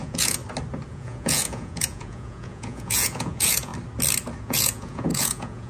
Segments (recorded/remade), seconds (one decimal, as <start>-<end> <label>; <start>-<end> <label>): 0.0-0.4 remade; 0.4-0.9 recorded; 0.9-3.7 remade; 3.7-4.4 recorded; 4.4-5.7 remade